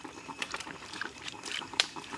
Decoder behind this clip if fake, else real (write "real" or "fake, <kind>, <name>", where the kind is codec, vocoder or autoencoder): fake, vocoder, BigVGAN v2